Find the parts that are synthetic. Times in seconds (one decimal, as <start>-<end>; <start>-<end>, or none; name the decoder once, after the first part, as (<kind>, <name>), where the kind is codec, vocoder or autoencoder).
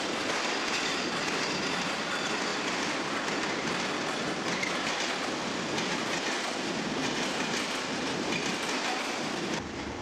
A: none